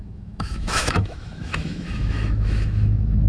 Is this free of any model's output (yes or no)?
no